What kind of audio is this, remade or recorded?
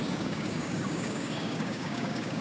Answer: remade